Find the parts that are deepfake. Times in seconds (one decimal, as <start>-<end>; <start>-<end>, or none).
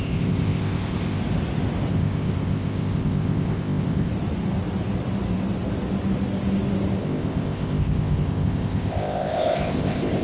0.0-1.2; 1.9-4.1; 7.0-10.2